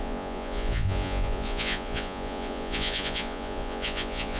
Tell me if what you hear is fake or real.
fake